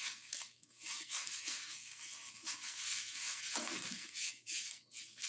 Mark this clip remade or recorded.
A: remade